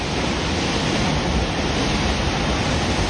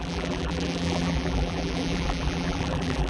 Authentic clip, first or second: first